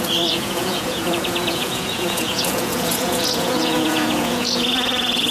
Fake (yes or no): yes